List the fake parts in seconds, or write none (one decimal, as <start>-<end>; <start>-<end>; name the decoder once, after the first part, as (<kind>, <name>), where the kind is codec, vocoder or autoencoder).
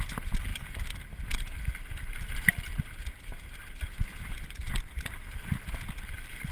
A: 0.0-0.5 (vocoder, BigVGAN v2); 2.0-3.0; 6.0-6.5